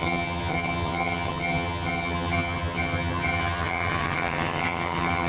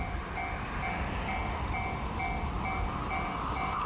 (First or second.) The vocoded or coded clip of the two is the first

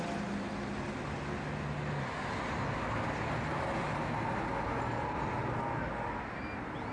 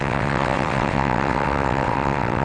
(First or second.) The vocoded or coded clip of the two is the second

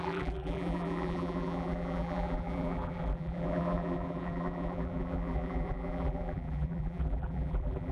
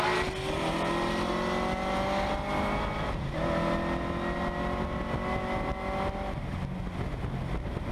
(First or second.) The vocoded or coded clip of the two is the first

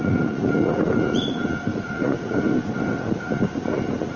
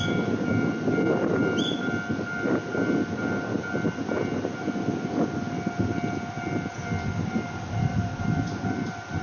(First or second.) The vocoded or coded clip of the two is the first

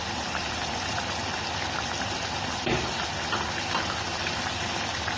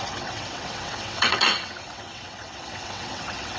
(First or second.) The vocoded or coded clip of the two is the second